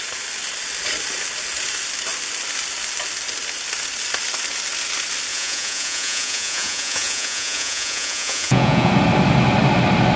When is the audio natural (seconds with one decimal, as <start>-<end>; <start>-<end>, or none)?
0.0-5.3; 8.9-10.2